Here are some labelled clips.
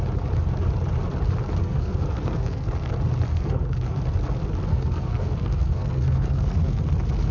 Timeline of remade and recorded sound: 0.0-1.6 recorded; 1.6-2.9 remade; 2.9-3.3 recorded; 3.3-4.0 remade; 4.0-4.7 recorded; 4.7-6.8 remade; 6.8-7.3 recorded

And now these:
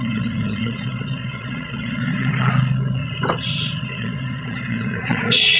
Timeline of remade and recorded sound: 0.0-3.0 remade; 3.0-3.8 recorded; 3.8-5.6 remade

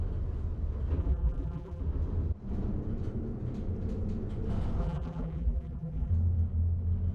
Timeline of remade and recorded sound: 0.0-1.0 recorded; 1.0-1.8 remade; 1.8-4.8 recorded; 4.8-6.1 remade; 6.1-7.1 recorded

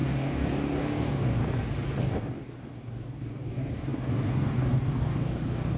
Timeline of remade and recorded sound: 0.0-1.4 remade; 1.4-2.0 recorded; 2.0-5.8 remade

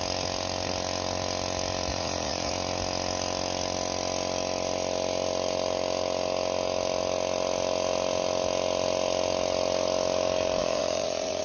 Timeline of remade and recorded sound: 0.0-1.9 recorded; 1.9-2.5 remade; 2.5-10.6 recorded; 10.6-11.4 remade

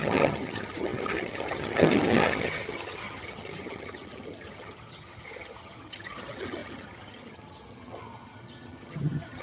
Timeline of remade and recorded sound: 0.0-9.4 remade

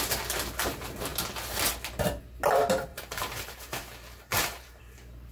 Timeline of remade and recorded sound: 0.0-2.9 recorded; 2.9-4.8 remade; 4.8-5.3 recorded

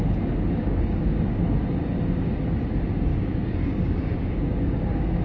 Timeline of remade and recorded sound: 0.0-0.6 recorded; 0.6-1.6 remade; 1.6-3.1 recorded; 3.1-5.2 remade